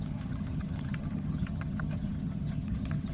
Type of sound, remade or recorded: remade